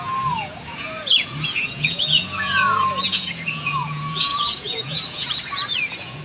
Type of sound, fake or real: fake